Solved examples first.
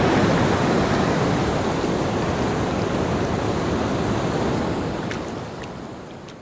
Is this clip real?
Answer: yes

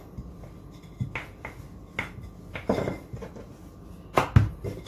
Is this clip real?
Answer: yes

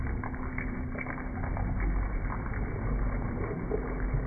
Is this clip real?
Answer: yes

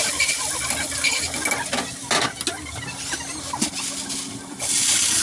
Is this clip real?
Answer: yes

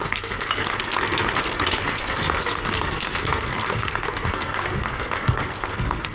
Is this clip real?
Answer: no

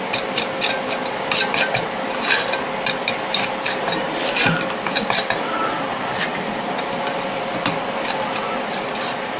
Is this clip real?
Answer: yes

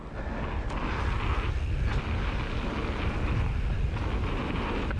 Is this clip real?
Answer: yes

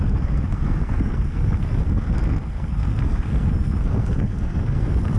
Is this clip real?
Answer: no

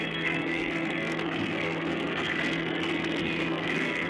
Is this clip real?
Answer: no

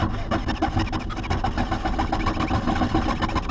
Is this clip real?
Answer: yes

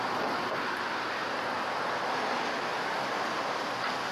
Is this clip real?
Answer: yes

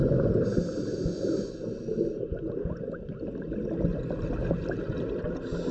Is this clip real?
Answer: yes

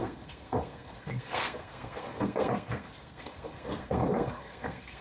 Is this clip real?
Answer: no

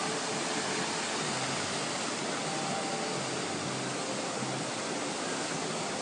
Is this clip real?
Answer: yes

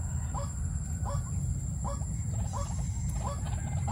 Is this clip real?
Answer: yes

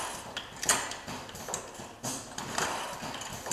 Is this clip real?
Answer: yes